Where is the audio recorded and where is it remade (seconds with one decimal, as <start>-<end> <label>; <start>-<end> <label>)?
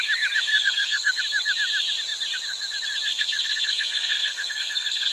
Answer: 0.0-0.5 recorded; 0.5-1.2 remade; 1.2-3.1 recorded; 3.1-5.1 remade